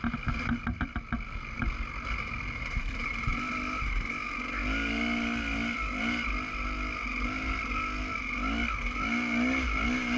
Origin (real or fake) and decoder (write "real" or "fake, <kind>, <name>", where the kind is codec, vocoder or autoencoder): real